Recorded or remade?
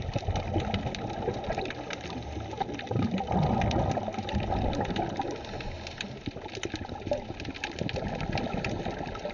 recorded